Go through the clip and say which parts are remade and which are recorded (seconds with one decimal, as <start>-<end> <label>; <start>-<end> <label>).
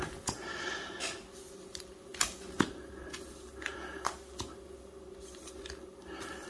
0.0-6.5 recorded